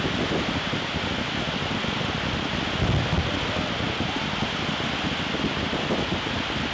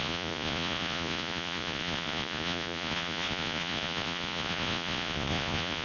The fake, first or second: second